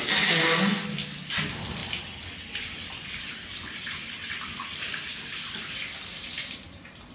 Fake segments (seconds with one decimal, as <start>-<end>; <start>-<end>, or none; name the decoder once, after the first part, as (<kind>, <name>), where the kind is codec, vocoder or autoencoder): 4.0-5.6 (vocoder, BigVGAN v2)